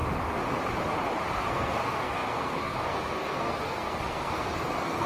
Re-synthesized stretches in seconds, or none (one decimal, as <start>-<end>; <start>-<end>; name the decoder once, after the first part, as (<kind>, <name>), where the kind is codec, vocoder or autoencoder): 1.3-5.1 (codec, SNAC)